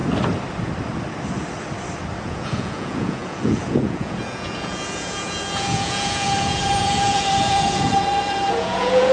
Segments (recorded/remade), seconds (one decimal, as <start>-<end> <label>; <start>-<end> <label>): 0.0-2.2 recorded; 2.2-9.1 remade